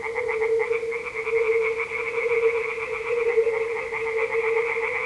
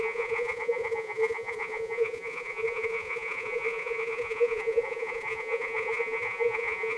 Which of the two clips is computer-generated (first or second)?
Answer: second